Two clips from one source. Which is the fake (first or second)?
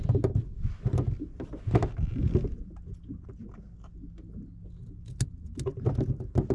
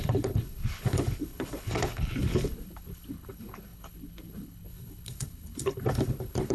second